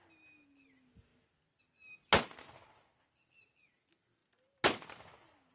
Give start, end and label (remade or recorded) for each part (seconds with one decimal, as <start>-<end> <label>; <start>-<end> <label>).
0.0-5.5 recorded